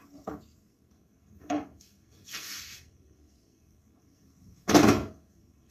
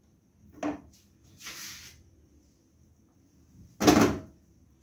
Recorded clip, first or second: second